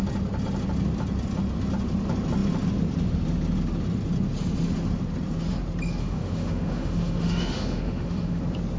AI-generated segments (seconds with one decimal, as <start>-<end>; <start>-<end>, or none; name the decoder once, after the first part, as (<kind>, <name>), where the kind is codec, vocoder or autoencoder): 6.0-8.4 (autoencoder, DAC-VAE)